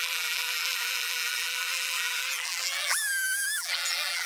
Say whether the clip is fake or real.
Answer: fake